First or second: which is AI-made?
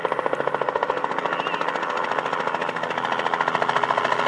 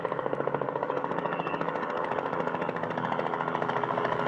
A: second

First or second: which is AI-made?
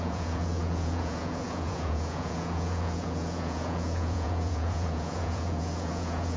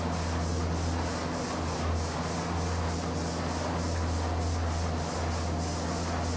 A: first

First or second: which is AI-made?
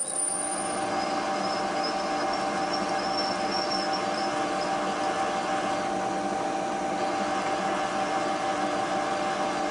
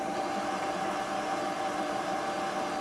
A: second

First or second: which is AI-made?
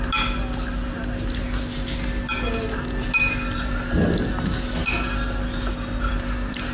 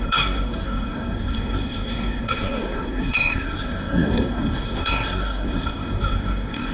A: second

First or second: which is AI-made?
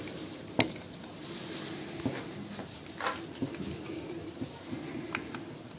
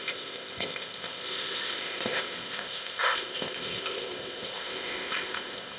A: second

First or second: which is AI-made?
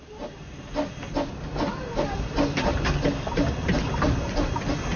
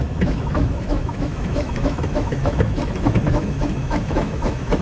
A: second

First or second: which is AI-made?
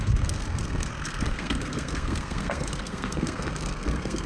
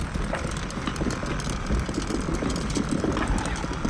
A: first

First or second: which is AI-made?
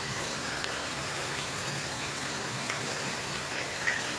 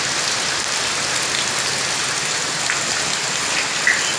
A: first